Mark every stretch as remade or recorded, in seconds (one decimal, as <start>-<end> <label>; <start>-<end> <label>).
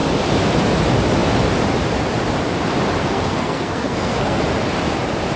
0.0-3.0 recorded; 3.0-4.4 remade; 4.4-5.4 recorded